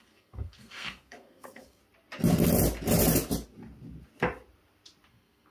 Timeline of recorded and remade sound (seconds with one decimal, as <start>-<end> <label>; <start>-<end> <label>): 0.0-1.8 remade; 1.8-5.1 recorded; 5.1-5.5 remade